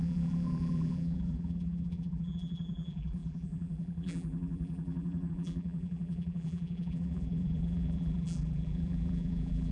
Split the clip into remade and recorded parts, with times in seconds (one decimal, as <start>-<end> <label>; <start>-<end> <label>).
0.0-9.7 remade